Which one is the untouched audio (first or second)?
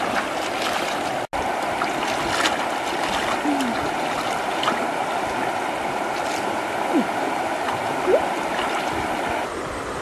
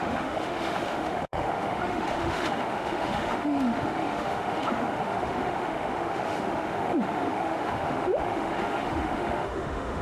first